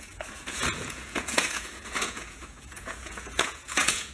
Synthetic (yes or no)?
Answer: yes